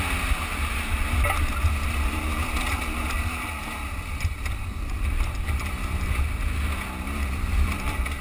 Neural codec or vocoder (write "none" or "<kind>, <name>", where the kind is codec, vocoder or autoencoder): none